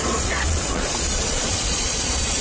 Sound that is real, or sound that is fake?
fake